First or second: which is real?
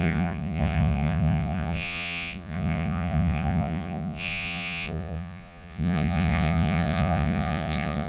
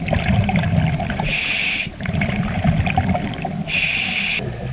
second